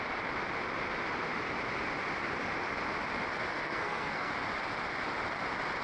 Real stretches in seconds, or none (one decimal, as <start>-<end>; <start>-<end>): 0.0-3.5; 4.3-5.8

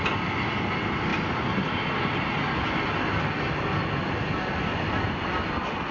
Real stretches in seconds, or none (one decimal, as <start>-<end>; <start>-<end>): 0.0-5.9

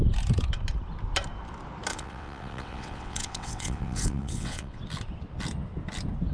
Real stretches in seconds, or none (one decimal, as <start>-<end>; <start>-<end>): 0.0-1.9; 4.8-6.3